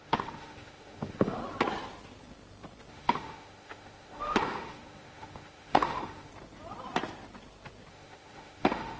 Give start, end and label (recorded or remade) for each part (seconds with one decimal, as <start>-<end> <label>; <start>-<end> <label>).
0.0-1.4 remade; 1.4-2.9 recorded; 2.9-6.3 remade; 6.3-7.9 recorded; 7.9-9.0 remade